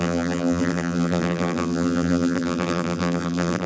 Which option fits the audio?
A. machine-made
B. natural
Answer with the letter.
A